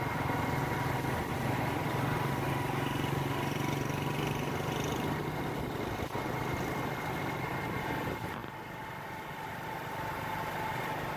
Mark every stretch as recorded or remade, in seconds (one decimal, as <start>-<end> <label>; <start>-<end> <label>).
0.0-11.2 recorded